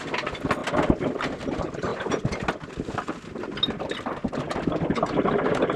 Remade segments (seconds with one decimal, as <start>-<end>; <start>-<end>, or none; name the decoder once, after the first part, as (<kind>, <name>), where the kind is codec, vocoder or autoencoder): none